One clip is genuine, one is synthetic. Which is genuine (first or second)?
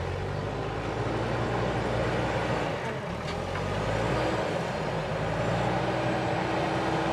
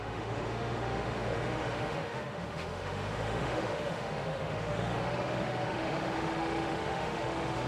first